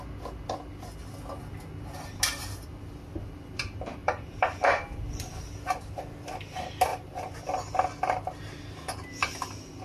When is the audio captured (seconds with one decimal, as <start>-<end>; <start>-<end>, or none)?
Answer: 0.0-4.0; 5.1-6.9; 8.4-9.8